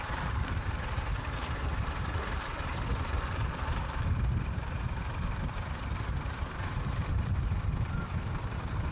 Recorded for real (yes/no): no